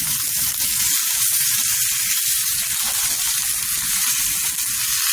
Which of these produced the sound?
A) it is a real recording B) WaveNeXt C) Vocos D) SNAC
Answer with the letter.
A